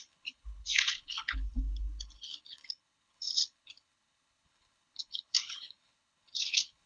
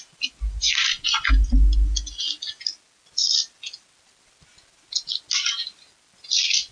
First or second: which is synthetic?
first